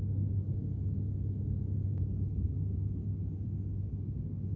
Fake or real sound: fake